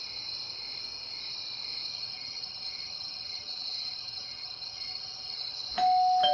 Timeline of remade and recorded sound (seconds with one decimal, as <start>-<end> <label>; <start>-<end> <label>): 0.0-1.9 recorded; 1.9-5.7 remade; 5.7-6.3 recorded